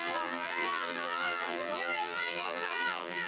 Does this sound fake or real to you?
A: fake